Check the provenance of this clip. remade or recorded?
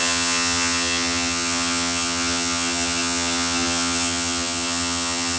remade